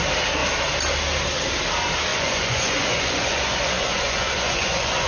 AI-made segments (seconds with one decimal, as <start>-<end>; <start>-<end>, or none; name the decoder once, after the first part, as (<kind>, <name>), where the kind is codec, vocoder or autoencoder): 2.1-5.1 (vocoder, Vocos)